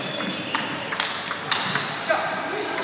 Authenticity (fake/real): real